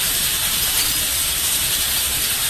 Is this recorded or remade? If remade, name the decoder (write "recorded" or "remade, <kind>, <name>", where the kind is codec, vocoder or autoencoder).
remade, vocoder, BigVGAN v2